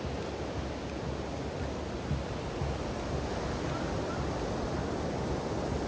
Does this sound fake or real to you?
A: real